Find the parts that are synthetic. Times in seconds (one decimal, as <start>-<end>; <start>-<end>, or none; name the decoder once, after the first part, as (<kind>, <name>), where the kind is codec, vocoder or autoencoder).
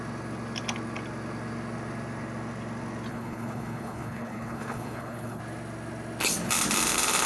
3.1-5.4 (codec, HILCodec)